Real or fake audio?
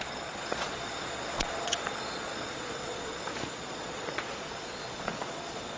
fake